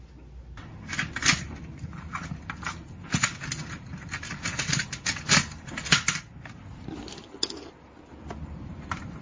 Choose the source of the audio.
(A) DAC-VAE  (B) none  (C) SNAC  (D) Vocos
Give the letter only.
B